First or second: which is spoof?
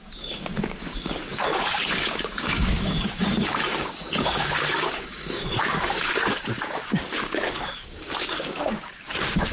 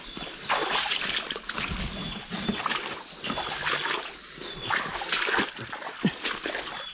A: first